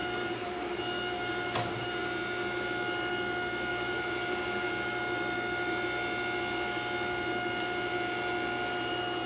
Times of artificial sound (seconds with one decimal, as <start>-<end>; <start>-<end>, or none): 0.0-0.7; 3.7-4.7